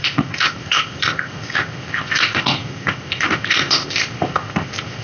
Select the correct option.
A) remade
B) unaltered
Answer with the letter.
A